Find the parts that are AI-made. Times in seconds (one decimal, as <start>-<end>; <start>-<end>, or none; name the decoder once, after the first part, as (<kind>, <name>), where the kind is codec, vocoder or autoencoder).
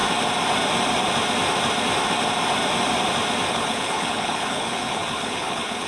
3.5-5.9 (codec, HILCodec)